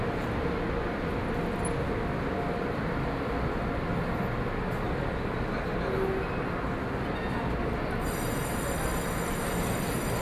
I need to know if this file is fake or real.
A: real